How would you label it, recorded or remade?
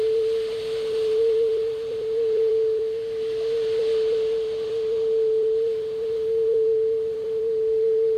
remade